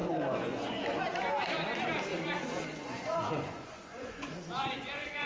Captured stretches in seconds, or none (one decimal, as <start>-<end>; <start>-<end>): 1.0-2.1